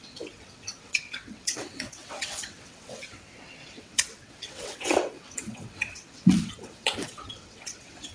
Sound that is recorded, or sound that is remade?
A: remade